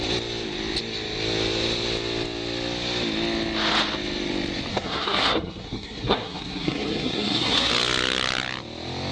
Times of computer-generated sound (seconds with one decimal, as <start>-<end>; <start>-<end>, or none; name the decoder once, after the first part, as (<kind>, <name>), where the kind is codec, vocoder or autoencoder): 4.7-7.7 (codec, SNAC)

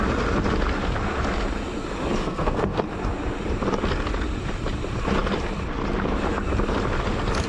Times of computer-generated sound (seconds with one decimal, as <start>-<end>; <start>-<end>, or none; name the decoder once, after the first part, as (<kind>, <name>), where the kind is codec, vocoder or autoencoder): 2.2-2.8 (codec, SNAC)

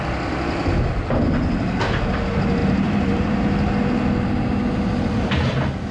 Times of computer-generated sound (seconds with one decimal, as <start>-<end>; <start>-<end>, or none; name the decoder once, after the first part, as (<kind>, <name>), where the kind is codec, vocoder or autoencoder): 2.6-3.3 (vocoder, BigVGAN v2)

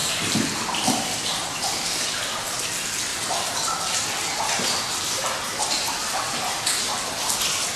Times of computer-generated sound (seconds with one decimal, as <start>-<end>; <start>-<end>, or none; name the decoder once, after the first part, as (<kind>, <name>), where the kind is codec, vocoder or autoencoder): 0.0-0.5 (vocoder, BigVGAN v2); 3.1-7.1